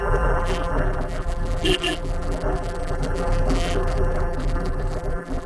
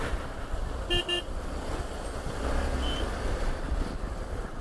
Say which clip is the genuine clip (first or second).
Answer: second